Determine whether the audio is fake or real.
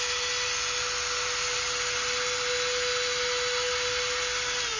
real